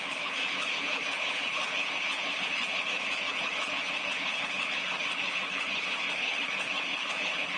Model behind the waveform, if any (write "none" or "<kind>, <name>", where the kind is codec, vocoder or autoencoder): codec, HILCodec